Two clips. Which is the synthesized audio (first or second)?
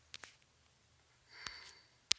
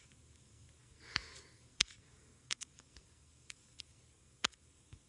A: second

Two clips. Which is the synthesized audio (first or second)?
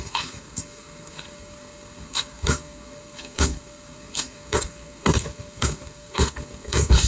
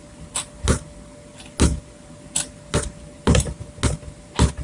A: first